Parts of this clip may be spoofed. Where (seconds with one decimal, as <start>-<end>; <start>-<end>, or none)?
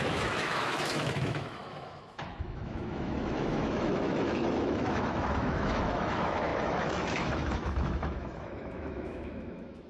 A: 0.0-9.9